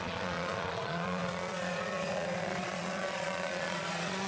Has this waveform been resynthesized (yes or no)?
yes